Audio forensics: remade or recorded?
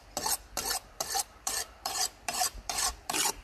remade